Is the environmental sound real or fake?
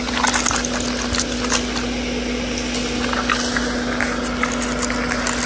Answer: real